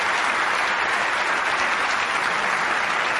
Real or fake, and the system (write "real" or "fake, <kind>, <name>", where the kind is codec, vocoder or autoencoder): real